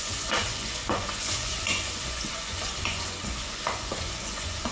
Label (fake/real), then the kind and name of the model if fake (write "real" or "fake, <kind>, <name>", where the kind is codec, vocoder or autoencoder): fake, vocoder, Vocos